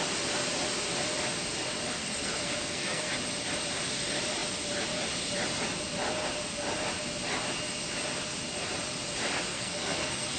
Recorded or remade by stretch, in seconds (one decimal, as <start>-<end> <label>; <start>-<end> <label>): 0.0-2.0 recorded; 2.0-3.1 remade; 3.1-9.5 recorded; 9.5-10.4 remade